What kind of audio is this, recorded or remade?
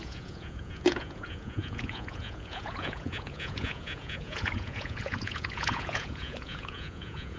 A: remade